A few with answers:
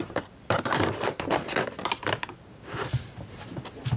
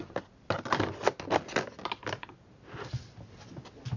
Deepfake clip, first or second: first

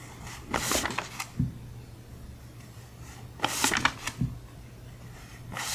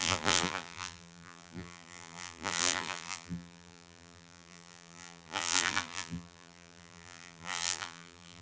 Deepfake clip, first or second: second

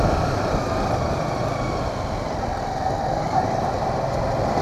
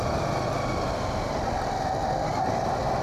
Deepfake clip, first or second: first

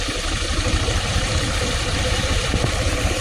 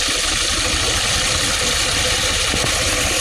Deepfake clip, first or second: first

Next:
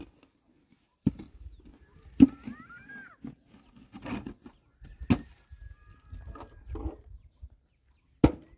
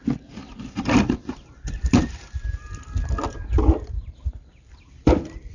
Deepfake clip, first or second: second